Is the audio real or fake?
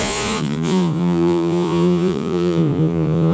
fake